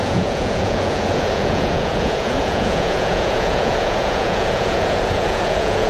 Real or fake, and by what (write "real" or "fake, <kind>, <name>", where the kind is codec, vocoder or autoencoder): fake, vocoder, Vocos